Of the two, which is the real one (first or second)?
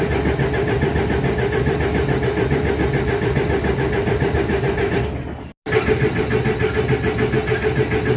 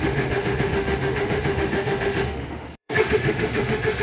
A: first